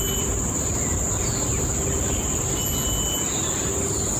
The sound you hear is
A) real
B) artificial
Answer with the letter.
A